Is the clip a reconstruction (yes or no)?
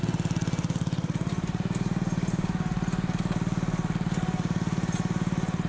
no